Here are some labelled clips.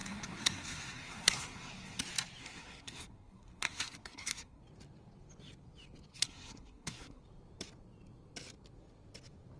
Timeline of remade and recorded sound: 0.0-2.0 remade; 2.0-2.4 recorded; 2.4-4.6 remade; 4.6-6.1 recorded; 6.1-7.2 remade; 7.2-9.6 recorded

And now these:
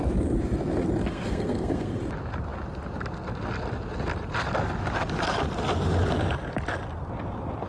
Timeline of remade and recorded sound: 0.0-1.0 recorded; 1.0-2.0 remade; 2.0-7.7 recorded